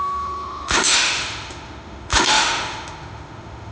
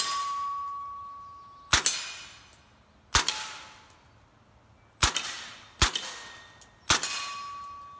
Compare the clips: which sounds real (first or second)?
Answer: second